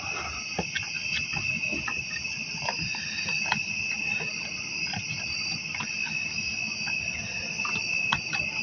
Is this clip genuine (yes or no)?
yes